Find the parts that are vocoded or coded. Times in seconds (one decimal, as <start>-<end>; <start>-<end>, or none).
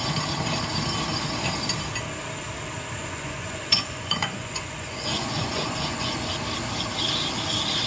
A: 3.0-6.3